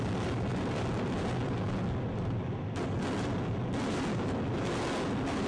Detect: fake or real real